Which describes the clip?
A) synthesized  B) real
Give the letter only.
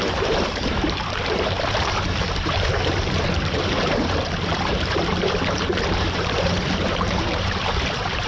A